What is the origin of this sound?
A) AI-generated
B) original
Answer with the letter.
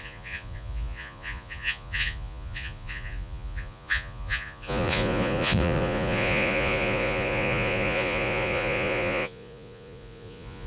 A